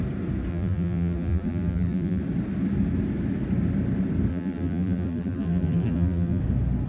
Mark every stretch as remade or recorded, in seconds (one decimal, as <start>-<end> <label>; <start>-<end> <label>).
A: 0.0-0.5 recorded; 0.5-2.2 remade; 2.2-4.3 recorded; 4.3-6.4 remade; 6.4-6.9 recorded